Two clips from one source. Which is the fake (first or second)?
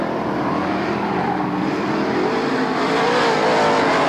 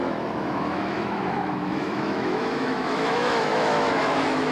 second